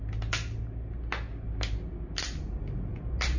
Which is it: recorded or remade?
recorded